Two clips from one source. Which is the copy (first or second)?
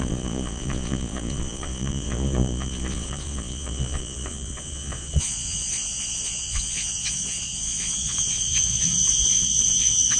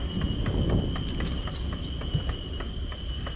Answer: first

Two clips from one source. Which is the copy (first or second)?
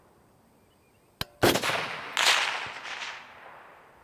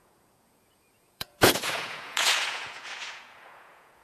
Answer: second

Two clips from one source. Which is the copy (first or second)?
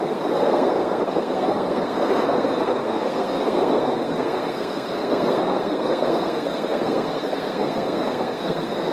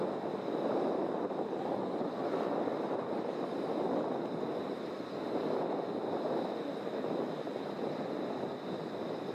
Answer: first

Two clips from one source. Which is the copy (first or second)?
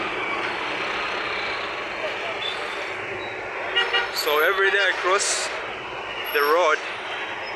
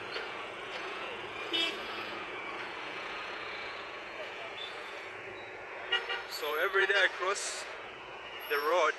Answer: second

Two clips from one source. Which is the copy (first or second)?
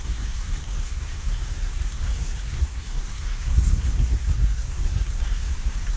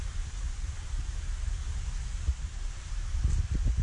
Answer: first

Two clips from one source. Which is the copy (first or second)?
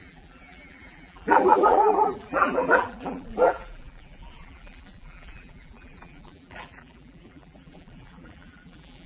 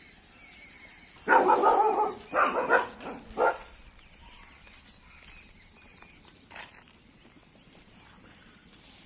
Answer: first